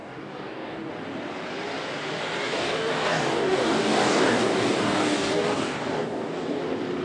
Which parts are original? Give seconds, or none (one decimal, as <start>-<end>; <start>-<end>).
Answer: 0.9-2.4; 6.6-7.0